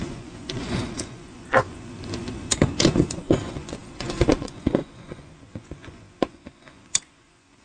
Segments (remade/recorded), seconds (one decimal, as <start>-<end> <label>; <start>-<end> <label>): 0.0-7.6 remade